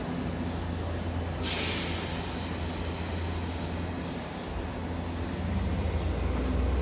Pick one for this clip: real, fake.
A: real